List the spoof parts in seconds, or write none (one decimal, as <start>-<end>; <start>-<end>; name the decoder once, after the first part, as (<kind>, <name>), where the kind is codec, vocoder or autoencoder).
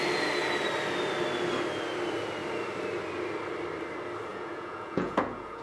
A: 4.3-5.6 (vocoder, Vocos)